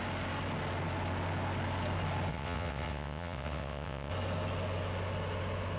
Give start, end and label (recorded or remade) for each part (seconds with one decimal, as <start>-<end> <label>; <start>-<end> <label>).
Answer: 0.0-2.3 recorded; 2.3-4.1 remade; 4.1-5.8 recorded